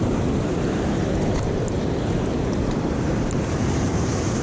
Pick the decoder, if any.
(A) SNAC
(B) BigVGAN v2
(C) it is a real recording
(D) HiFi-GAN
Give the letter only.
B